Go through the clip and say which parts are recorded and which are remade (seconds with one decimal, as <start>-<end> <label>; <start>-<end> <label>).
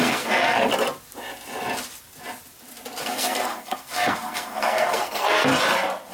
0.0-0.7 remade; 0.7-3.0 recorded; 3.0-5.5 remade; 5.5-6.1 recorded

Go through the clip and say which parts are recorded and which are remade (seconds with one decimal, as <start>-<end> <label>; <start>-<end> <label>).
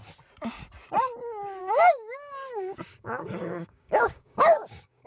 0.0-1.6 recorded; 1.6-5.1 remade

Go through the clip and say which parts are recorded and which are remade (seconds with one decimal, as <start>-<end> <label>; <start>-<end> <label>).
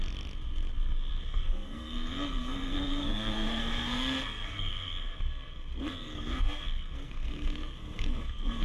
0.0-1.2 recorded; 1.2-8.6 remade